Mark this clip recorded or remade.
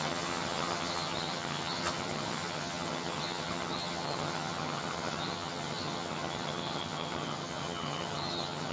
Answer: remade